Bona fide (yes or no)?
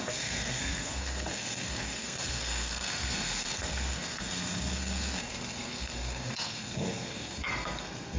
no